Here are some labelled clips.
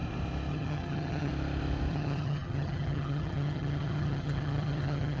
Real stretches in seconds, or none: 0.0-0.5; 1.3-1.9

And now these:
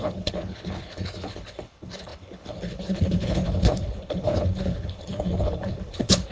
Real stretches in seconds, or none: none

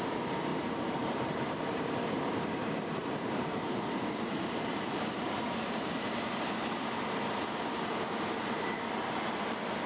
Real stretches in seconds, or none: none

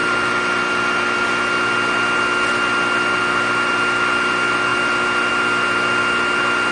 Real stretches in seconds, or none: 0.0-6.7